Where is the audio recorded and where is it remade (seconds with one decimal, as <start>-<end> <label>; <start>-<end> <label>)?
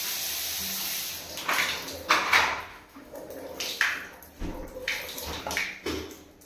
0.0-2.7 recorded; 2.7-3.3 remade; 3.3-6.5 recorded